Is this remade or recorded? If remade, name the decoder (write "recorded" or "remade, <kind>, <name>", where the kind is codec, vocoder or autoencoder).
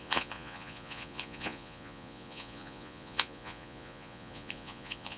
remade, vocoder, Vocos